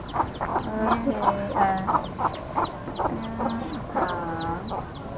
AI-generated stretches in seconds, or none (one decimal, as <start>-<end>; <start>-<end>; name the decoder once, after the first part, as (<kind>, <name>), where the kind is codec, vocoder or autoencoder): none